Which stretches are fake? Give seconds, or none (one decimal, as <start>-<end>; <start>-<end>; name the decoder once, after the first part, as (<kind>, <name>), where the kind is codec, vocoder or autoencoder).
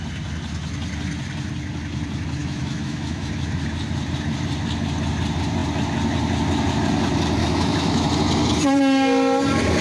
2.4-3.3 (autoencoder, DAC-VAE); 7.4-8.1